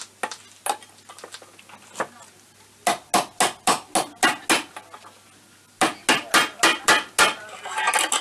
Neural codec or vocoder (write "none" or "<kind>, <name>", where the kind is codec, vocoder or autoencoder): none